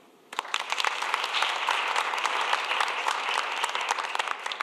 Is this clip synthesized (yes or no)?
yes